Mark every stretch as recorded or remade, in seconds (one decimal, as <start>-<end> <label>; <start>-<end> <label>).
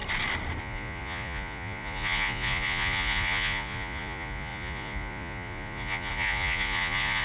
0.0-0.6 recorded; 0.6-7.2 remade